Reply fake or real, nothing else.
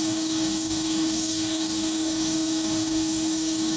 fake